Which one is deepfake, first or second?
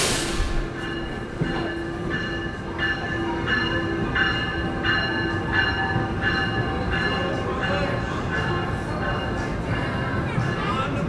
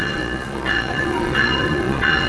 second